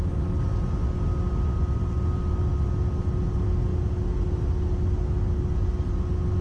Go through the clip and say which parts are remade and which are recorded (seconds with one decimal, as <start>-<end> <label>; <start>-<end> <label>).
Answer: 0.0-6.4 recorded